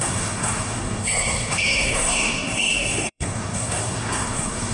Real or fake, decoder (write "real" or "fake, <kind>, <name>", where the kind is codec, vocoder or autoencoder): fake, codec, SNAC